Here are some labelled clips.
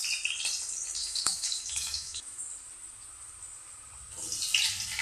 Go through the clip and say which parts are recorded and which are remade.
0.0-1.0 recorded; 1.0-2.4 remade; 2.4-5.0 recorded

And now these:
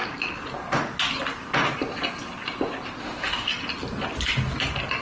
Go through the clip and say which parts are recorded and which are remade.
0.0-3.0 recorded; 3.0-3.5 remade; 3.5-5.0 recorded

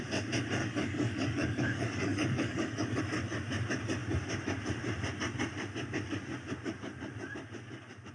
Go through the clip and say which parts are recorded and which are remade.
0.0-0.6 recorded; 0.6-3.0 remade; 3.0-8.1 recorded

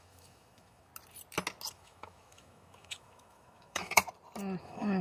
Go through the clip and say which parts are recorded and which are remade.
0.0-0.9 remade; 0.9-1.7 recorded; 1.7-4.0 remade; 4.0-4.6 recorded; 4.6-5.0 remade